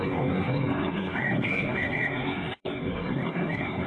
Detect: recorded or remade remade